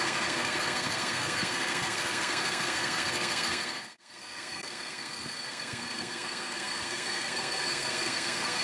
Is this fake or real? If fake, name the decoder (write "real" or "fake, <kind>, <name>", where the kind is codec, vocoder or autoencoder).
fake, codec, SNAC